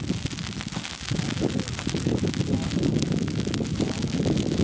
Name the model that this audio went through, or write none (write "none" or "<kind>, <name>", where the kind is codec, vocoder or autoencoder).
none